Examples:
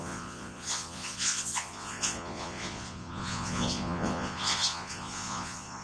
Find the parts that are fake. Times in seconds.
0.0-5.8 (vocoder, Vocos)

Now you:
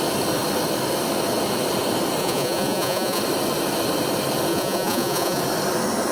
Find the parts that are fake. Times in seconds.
2.2-3.2 (vocoder, Vocos); 4.5-5.4

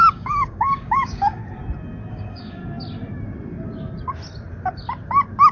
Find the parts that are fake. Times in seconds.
0.0-1.4 (codec, DAC); 2.1-2.6

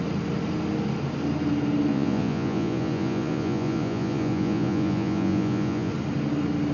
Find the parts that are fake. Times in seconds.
1.9-5.9 (vocoder, Vocos)

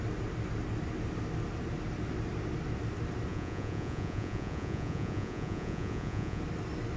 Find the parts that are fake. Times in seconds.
3.3-6.4 (vocoder, Vocos)

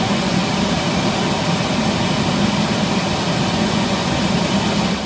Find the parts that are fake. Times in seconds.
0.0-0.4 (vocoder, Vocos); 3.5-4.2

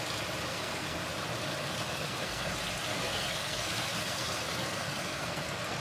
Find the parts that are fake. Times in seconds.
0.5-1.0 (codec, SNAC); 1.6-2.5; 2.9-5.8

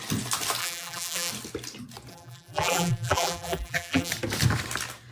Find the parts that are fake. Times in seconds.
0.6-1.3 (vocoder, BigVGAN v2); 2.1-4.1